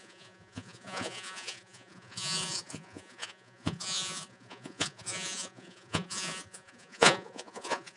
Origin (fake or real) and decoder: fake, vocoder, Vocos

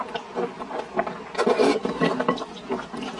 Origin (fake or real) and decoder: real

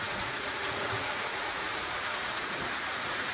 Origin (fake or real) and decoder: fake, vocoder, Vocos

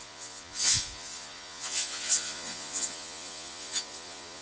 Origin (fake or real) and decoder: fake, vocoder, Vocos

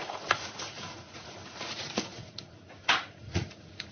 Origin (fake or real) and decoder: fake, vocoder, Vocos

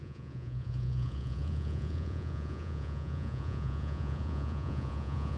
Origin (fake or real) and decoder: fake, vocoder, Vocos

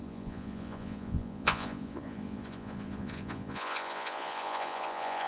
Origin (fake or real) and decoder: fake, vocoder, Vocos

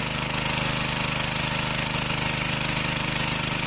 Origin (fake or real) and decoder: real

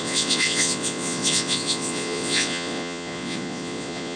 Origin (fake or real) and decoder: fake, vocoder, Vocos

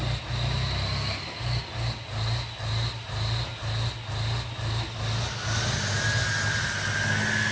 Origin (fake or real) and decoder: real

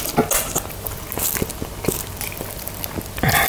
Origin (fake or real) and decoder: real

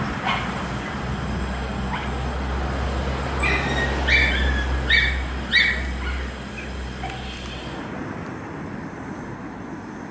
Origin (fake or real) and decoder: real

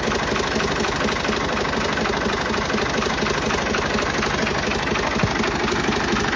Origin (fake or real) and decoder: real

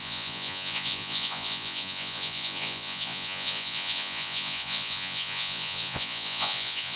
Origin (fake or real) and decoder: fake, vocoder, Vocos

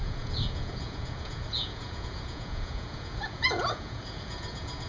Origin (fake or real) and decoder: fake, vocoder, Vocos